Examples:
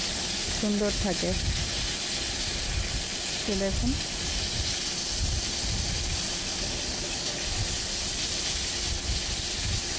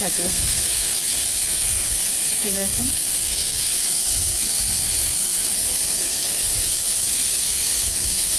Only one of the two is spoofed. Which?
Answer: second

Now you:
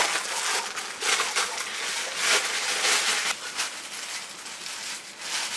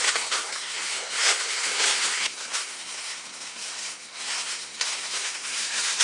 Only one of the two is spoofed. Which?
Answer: second